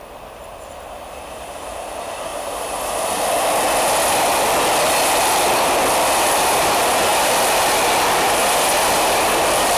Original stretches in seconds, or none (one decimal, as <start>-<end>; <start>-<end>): 2.3-5.5